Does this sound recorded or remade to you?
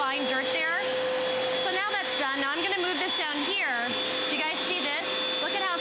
recorded